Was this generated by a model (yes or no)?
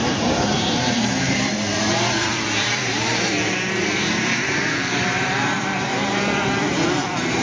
yes